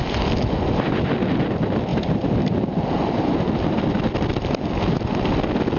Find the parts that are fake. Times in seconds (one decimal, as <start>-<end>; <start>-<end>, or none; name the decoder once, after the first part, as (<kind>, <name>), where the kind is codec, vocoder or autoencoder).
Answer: none